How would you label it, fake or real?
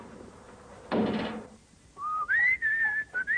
fake